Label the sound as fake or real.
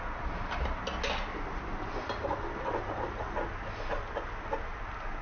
real